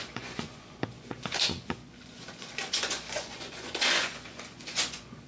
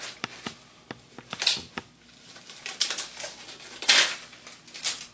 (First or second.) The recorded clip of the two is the second